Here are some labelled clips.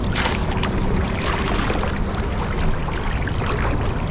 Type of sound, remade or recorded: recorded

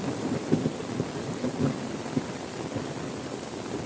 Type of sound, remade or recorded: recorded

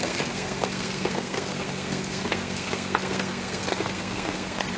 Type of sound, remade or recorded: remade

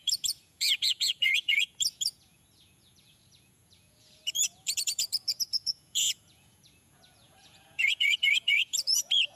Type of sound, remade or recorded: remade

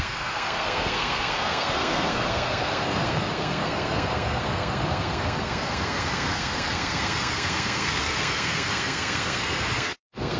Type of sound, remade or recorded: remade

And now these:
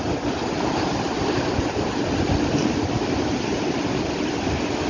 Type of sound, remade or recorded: recorded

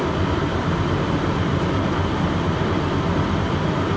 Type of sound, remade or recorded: remade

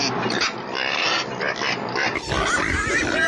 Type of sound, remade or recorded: recorded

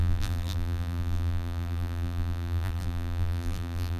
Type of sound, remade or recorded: remade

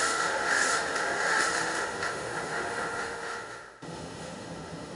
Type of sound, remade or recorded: remade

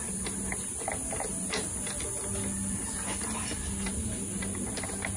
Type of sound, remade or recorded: recorded